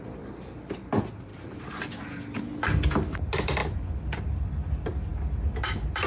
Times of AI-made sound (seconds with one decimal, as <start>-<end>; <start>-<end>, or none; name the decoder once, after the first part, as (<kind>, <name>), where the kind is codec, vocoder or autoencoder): none